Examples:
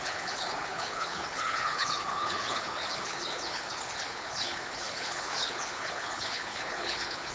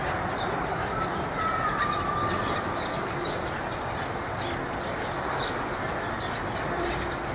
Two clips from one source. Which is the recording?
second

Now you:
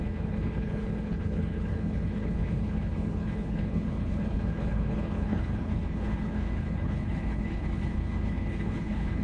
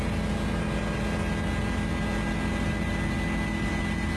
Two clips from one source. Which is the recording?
second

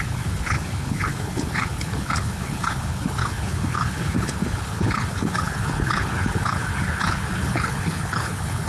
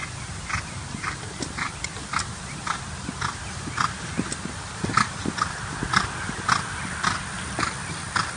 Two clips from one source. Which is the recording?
second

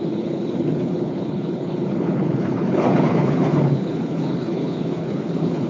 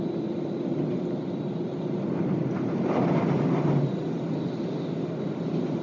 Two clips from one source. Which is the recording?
second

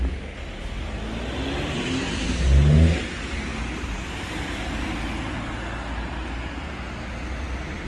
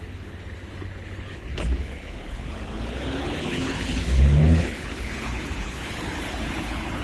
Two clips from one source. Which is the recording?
first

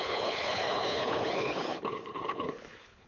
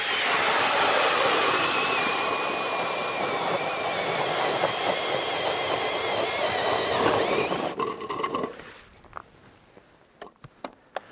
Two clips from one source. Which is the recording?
second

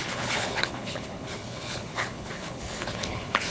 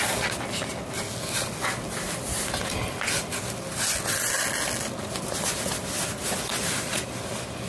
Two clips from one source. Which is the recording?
second